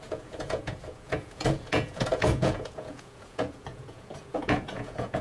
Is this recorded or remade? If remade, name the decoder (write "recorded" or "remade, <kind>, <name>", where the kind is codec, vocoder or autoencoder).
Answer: remade, vocoder, Vocos